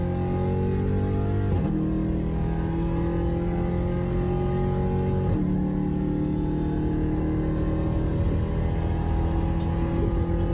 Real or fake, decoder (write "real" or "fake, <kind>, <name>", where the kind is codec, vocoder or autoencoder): real